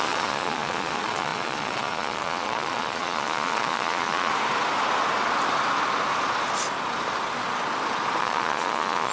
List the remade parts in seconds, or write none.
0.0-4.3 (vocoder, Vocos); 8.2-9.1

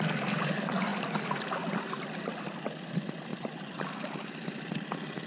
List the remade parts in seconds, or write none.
none

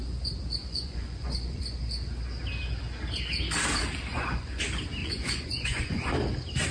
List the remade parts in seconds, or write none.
0.6-1.8 (vocoder, Vocos); 4.1-4.6; 5.0-6.1

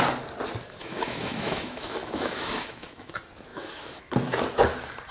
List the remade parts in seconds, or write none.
0.8-3.1 (autoencoder, DAC-VAE); 3.5-4.1

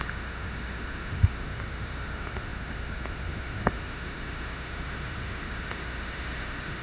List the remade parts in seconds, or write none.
0.0-6.8 (autoencoder, DAC-VAE)

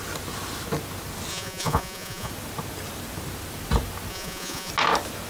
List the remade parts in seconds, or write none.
1.3-2.3 (vocoder, Vocos); 4.1-4.7

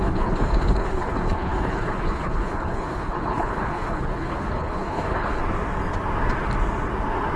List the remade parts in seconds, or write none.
0.0-5.4 (codec, HILCodec)